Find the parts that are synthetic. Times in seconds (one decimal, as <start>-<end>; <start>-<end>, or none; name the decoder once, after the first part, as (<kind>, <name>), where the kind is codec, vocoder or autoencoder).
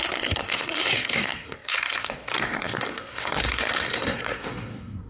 0.0-5.1 (codec, SNAC)